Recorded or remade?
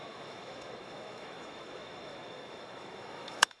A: remade